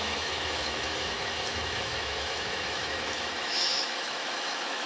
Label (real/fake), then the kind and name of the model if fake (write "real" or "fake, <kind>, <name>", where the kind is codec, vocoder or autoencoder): fake, autoencoder, DAC-VAE